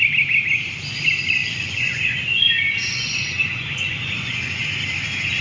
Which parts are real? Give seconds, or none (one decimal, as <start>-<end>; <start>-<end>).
0.0-1.4; 4.6-5.4